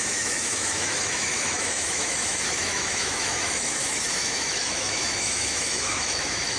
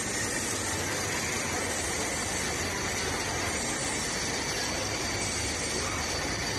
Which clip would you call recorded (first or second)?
second